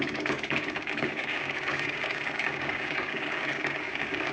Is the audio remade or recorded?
remade